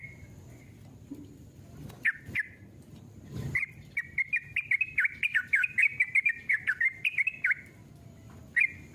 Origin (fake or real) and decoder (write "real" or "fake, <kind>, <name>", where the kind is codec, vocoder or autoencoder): real